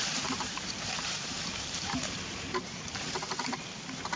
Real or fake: fake